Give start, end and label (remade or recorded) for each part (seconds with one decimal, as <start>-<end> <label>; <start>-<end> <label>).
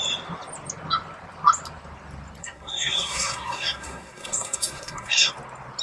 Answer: 0.0-2.4 recorded; 2.4-5.3 remade; 5.3-5.8 recorded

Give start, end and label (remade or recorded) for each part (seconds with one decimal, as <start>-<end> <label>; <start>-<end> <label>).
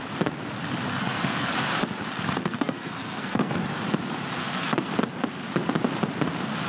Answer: 0.0-0.9 recorded; 0.9-1.5 remade; 1.5-2.4 recorded; 2.4-3.5 remade; 3.5-4.4 recorded; 4.4-4.9 remade; 4.9-6.7 recorded